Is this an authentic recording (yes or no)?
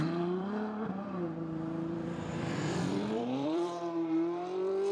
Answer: no